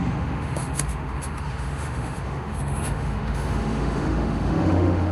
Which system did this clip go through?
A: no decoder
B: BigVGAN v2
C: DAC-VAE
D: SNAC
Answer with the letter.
C